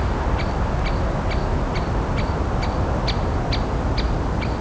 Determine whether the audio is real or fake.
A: real